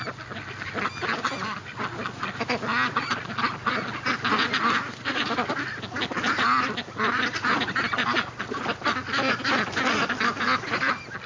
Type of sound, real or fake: real